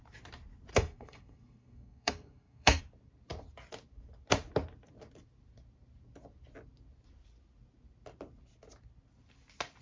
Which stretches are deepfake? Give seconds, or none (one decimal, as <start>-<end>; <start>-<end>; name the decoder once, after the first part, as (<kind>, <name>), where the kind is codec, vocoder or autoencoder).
0.7-2.8 (codec, SNAC)